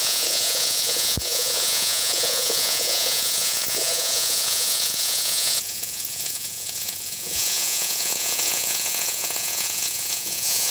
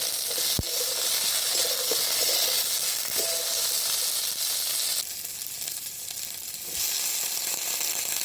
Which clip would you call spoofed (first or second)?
first